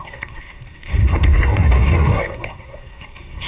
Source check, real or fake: fake